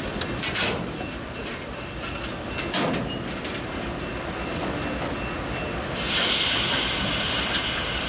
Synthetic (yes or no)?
no